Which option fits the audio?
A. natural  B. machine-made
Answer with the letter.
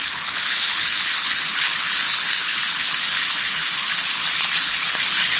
B